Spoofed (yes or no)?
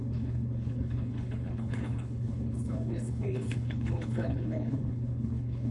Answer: yes